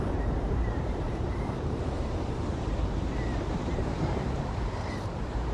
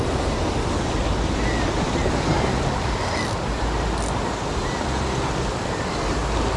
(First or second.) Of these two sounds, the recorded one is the second